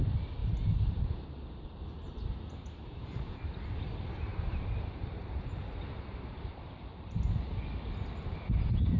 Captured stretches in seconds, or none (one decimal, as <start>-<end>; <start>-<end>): 0.0-0.4; 3.5-4.3; 7.4-9.0